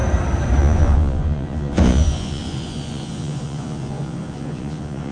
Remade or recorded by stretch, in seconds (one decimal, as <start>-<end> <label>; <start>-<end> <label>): 0.0-0.6 recorded; 0.6-5.1 remade